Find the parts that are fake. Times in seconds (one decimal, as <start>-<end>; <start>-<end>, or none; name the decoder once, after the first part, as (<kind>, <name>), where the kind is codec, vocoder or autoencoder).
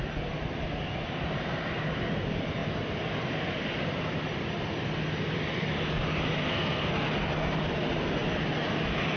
6.4-7.1 (codec, SNAC)